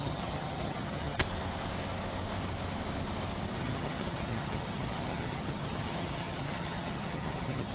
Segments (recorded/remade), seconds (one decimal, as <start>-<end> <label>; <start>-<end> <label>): 0.0-1.2 remade; 1.2-3.6 recorded; 3.6-7.7 remade